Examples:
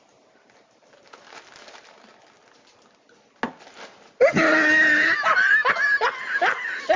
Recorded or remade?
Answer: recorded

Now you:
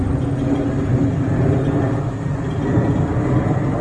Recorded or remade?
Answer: recorded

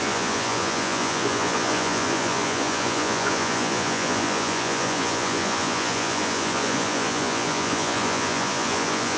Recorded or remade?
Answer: remade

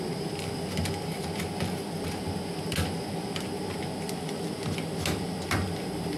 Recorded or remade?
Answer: recorded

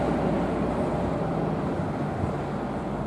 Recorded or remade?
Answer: recorded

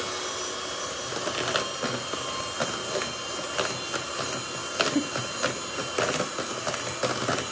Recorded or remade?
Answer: recorded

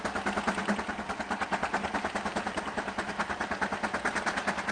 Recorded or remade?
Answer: recorded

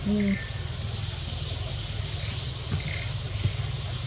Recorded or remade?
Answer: recorded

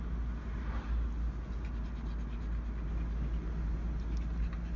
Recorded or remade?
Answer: recorded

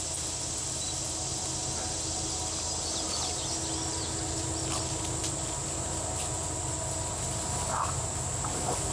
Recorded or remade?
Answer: recorded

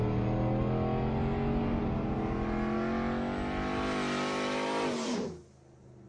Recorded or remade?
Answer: recorded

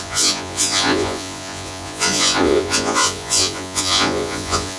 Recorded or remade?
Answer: remade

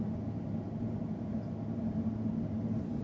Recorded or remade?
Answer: recorded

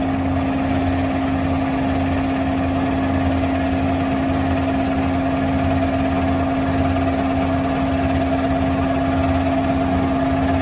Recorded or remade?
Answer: recorded